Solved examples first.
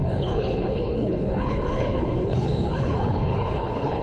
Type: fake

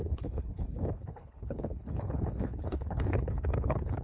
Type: fake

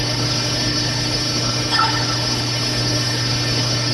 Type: fake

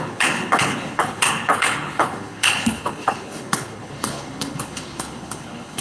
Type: fake